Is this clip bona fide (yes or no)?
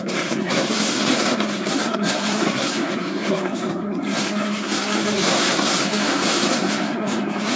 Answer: no